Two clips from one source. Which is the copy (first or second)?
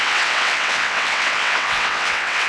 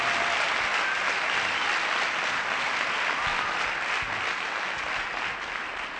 first